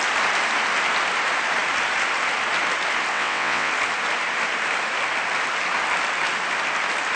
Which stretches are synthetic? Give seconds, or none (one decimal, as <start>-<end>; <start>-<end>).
3.1-3.7